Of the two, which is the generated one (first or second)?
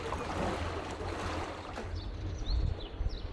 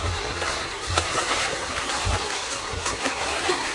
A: second